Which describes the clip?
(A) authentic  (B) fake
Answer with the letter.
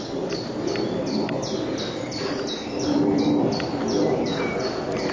A